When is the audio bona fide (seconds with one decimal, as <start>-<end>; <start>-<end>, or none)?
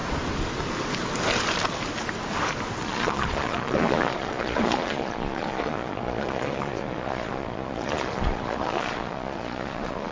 0.0-2.8